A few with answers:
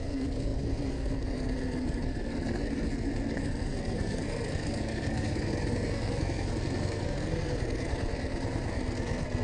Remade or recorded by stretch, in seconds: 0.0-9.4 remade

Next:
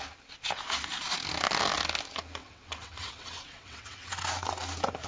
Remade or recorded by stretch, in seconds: 0.0-2.4 recorded; 2.4-4.1 remade; 4.1-5.1 recorded

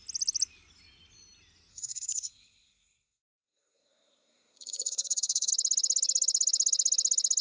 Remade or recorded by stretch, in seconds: 0.0-1.7 recorded; 1.7-5.5 remade; 5.5-7.4 recorded

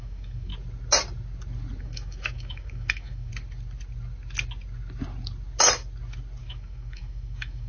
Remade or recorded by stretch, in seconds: 0.0-0.5 remade; 0.5-1.8 recorded; 1.8-3.3 remade; 3.3-6.4 recorded; 6.4-7.7 remade

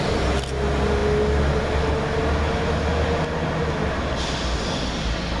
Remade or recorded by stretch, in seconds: 0.0-5.4 recorded

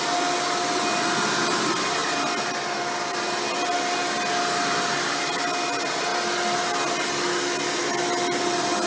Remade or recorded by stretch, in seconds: 0.0-8.9 recorded

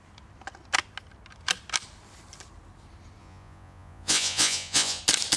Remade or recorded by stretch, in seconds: 0.0-3.2 recorded; 3.2-5.0 remade; 5.0-5.4 recorded

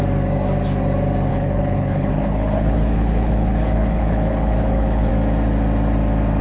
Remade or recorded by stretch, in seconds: 0.0-1.3 recorded; 1.3-5.1 remade; 5.1-6.4 recorded